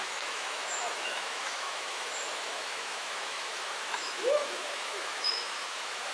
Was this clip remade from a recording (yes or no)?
yes